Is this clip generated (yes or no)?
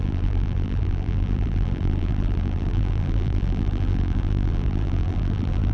yes